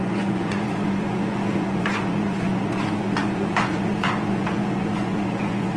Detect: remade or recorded remade